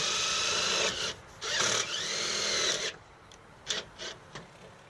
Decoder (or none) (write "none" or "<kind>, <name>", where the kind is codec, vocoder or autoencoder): none